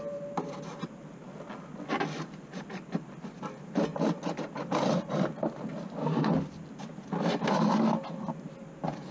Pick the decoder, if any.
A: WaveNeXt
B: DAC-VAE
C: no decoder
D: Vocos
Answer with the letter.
C